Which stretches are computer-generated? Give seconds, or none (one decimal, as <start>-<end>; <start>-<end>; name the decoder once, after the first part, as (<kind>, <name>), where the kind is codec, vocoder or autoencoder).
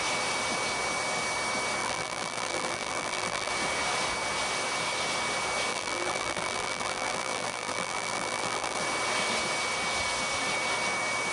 1.8-3.5 (vocoder, BigVGAN v2); 5.7-8.8